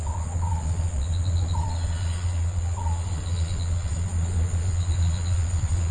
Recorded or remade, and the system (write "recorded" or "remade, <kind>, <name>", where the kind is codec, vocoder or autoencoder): remade, vocoder, Vocos